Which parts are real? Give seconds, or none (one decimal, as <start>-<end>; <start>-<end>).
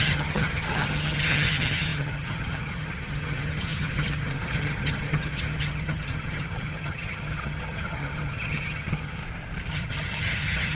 9.2-9.7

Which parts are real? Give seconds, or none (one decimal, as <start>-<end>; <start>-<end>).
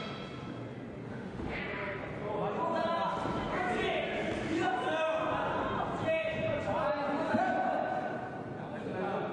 0.0-1.1; 1.6-9.3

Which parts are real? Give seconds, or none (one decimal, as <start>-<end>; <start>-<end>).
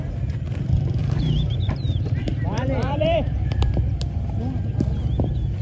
0.0-1.0; 4.4-5.6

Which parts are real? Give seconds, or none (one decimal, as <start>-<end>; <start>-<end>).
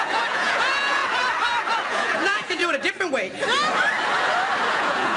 1.0-1.9; 2.6-4.7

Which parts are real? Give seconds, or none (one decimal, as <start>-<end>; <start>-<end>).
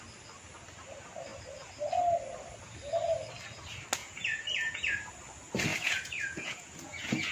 0.0-4.0; 5.1-5.7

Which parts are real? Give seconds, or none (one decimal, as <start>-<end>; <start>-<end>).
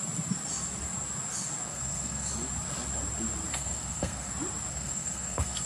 0.0-1.7; 2.3-3.5; 4.3-4.7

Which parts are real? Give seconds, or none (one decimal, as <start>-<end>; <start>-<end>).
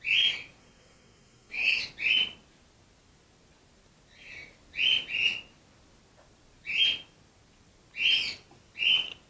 0.0-0.6; 1.8-9.3